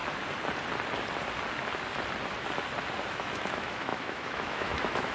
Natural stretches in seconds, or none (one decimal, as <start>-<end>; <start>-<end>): 0.0-3.1